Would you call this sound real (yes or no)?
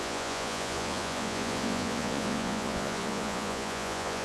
no